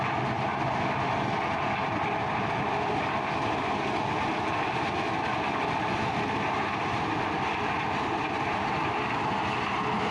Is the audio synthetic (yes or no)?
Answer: no